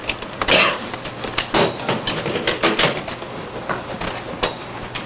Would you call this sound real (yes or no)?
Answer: yes